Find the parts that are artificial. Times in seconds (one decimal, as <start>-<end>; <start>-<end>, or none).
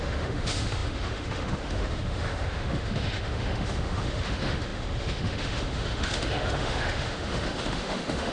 0.0-8.3